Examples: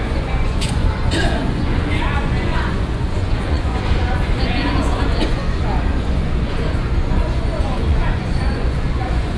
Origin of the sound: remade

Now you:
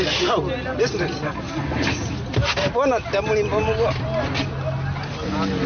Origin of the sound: recorded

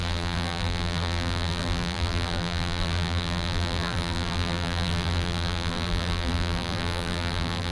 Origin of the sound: remade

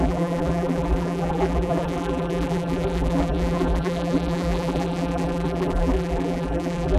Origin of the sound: remade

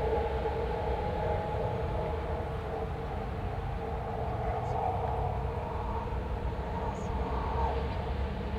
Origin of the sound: recorded